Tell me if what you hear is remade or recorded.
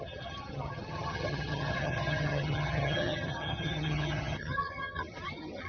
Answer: remade